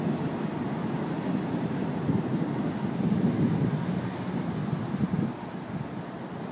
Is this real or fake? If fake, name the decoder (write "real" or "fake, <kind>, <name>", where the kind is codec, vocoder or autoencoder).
real